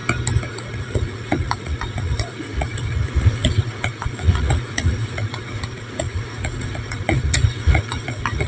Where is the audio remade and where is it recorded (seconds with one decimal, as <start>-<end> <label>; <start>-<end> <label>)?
0.0-0.5 recorded; 0.5-8.5 remade